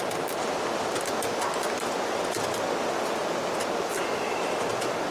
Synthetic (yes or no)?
no